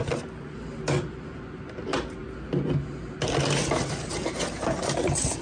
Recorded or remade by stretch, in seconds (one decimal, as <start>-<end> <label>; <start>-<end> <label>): 0.0-5.4 recorded